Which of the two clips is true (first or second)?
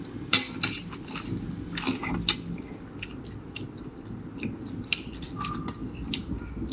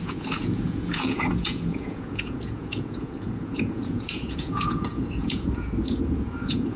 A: first